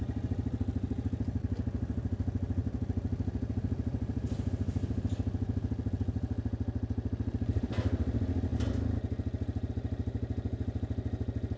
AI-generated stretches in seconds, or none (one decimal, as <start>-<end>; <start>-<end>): none